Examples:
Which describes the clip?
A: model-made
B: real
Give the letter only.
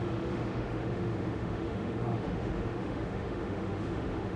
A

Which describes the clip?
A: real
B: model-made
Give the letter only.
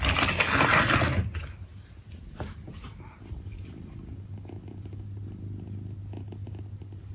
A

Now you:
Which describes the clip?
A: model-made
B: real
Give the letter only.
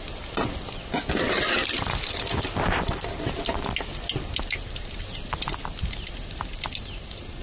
B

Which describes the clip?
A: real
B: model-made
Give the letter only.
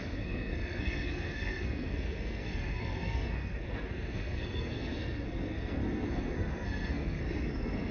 B